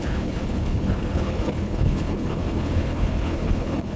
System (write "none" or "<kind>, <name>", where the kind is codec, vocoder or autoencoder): codec, HILCodec